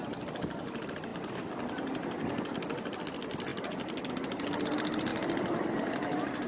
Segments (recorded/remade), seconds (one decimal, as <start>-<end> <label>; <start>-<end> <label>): 0.0-3.5 recorded; 3.5-4.1 remade; 4.1-5.1 recorded; 5.1-5.9 remade; 5.9-6.5 recorded